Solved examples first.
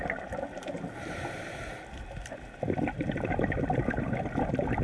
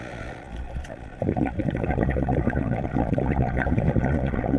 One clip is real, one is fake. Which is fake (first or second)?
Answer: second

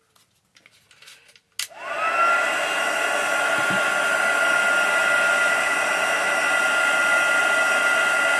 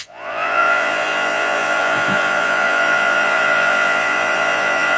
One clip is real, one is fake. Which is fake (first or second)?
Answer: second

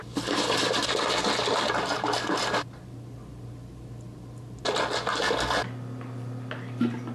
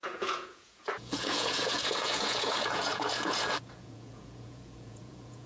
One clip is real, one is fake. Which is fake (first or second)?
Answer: second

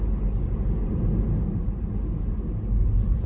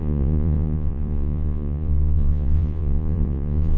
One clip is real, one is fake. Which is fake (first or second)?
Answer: second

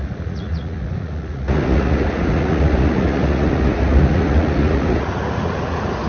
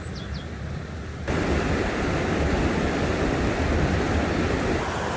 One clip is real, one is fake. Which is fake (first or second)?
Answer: first